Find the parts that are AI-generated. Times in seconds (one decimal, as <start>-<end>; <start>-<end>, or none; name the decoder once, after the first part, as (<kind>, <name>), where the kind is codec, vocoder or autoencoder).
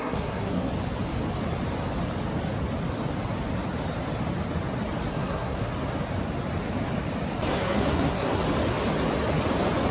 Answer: 0.0-0.7 (codec, SNAC); 5.1-5.7; 7.5-8.4